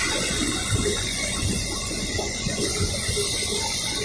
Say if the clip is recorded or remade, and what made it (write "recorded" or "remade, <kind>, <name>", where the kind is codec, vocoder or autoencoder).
remade, vocoder, Vocos